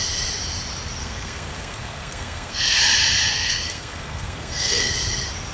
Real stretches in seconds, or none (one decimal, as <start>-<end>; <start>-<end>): 0.0-1.0; 2.8-3.3; 4.9-5.5